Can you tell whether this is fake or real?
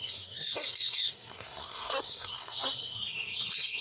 fake